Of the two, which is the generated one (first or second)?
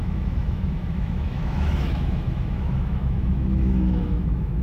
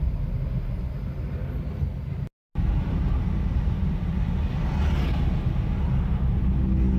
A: first